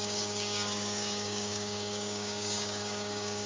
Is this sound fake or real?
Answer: fake